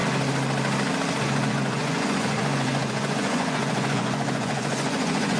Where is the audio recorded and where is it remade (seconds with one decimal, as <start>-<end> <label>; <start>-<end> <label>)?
0.0-1.2 recorded; 1.2-5.4 remade